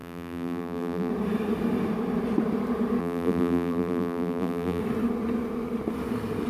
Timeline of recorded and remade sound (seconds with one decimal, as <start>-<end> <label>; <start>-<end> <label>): 0.0-1.1 remade; 1.1-3.0 recorded; 3.0-4.8 remade; 4.8-6.5 recorded